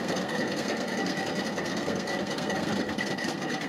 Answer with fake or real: fake